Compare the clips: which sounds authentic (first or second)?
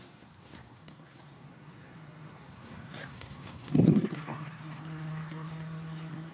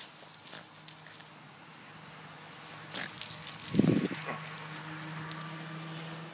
second